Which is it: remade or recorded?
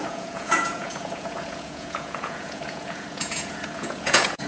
remade